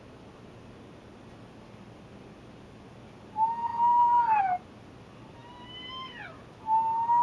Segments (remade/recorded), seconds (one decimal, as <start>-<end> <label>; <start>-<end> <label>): 0.0-7.2 recorded